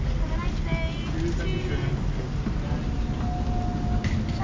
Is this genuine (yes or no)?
yes